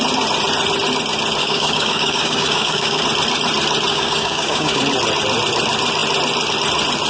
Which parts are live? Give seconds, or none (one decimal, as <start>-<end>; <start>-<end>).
0.0-1.4; 3.0-3.9; 4.8-7.1